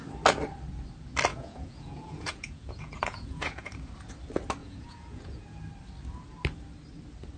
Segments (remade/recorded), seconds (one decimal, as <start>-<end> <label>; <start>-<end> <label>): 0.0-1.3 recorded; 1.3-3.7 remade; 3.7-4.6 recorded; 4.6-5.6 remade; 5.6-7.4 recorded